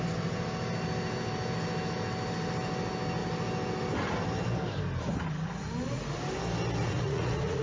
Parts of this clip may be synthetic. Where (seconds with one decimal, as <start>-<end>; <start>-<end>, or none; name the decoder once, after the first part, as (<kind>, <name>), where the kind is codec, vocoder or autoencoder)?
6.8-7.6 (vocoder, Vocos)